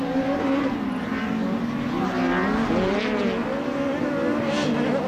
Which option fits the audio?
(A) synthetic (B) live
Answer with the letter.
B